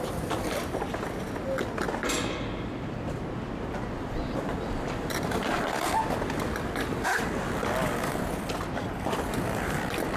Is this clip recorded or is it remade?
recorded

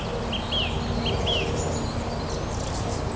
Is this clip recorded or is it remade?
recorded